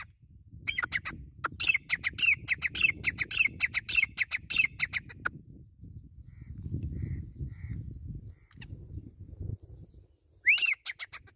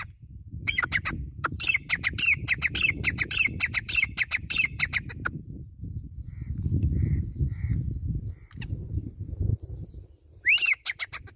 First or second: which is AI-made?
second